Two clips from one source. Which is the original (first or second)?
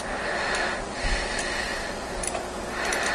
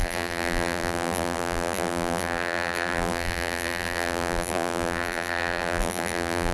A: first